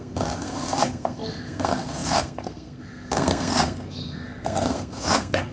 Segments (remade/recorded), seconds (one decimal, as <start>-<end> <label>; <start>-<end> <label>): 0.0-5.5 remade